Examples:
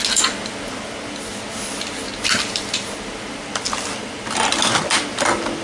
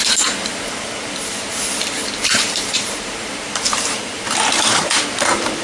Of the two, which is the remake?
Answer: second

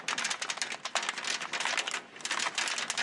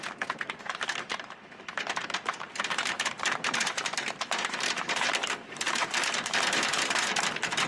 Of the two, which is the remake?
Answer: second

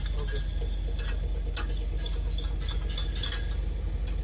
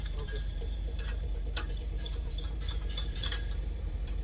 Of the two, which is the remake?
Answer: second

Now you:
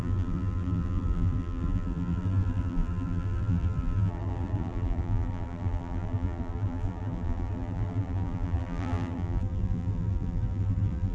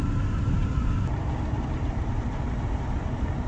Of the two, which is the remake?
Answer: first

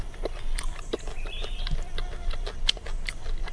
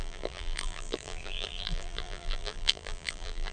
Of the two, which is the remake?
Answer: second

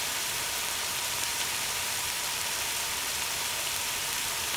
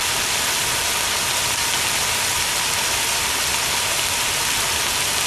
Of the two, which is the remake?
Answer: first